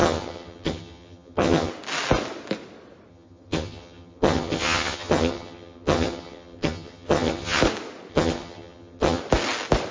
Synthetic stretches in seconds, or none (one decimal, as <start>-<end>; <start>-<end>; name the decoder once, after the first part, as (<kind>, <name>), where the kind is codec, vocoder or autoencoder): 0.0-1.7 (vocoder, HiFi-GAN); 3.1-7.6; 8.1-9.2